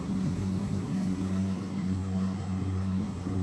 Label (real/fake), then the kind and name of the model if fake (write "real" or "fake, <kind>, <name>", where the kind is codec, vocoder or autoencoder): fake, codec, SNAC